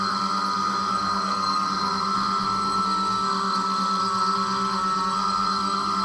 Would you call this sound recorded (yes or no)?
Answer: no